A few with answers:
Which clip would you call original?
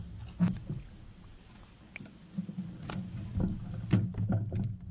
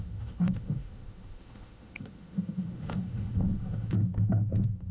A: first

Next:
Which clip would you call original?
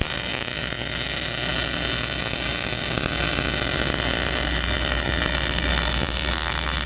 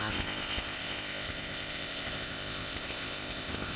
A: first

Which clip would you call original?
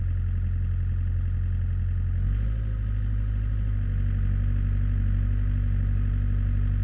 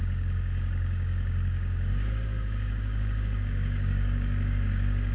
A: first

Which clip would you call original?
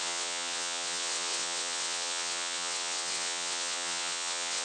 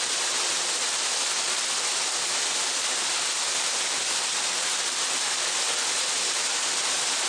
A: second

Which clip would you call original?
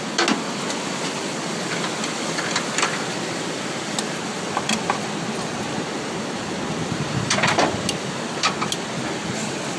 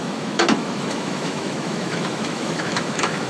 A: first